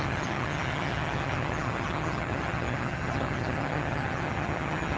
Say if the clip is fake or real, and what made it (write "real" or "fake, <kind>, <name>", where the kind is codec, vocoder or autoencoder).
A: fake, vocoder, HiFi-GAN